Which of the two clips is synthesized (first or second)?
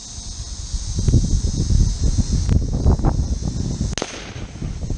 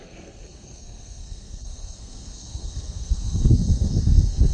second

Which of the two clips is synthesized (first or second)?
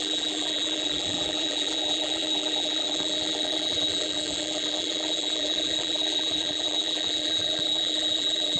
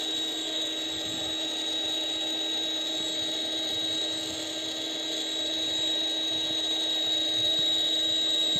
first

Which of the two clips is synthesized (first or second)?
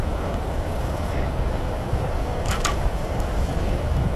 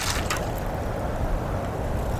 first